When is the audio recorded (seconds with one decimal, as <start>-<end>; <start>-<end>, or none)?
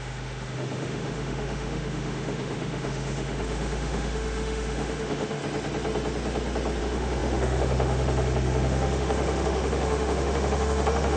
5.4-6.8